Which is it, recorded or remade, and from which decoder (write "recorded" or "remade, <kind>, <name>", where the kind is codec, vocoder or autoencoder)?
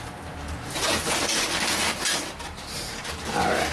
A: recorded